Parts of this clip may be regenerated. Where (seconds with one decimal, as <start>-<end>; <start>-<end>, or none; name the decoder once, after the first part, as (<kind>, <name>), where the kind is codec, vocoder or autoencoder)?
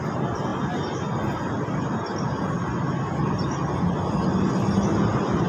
none